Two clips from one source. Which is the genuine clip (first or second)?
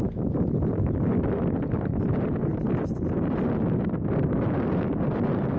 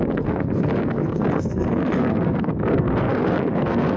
first